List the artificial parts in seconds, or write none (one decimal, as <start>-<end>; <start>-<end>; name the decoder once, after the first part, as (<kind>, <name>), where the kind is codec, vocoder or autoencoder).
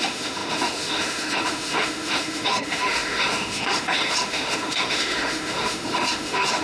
0.0-6.6 (autoencoder, DAC-VAE)